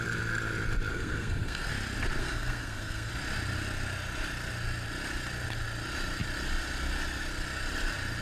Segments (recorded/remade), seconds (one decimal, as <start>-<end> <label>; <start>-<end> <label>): 0.0-0.9 recorded; 0.9-1.7 remade; 1.7-2.2 recorded; 2.2-3.1 remade; 3.1-8.2 recorded